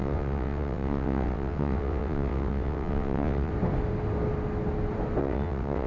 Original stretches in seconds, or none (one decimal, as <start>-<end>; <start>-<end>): 3.5-5.2